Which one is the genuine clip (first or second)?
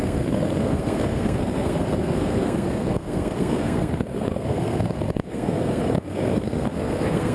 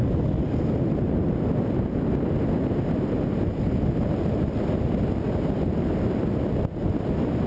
second